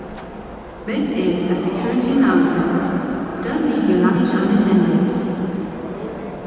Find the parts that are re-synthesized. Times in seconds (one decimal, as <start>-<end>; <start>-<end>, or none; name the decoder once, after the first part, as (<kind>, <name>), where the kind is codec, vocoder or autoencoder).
0.0-3.3 (vocoder, BigVGAN v2); 4.1-6.5